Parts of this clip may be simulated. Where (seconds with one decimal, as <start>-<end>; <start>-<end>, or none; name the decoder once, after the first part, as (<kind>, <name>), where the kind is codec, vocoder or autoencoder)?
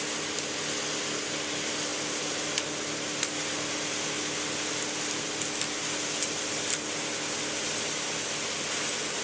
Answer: none